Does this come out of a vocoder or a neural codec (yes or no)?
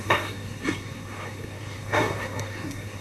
yes